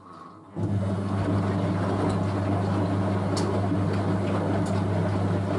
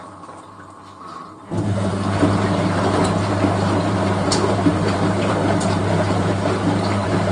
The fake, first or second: second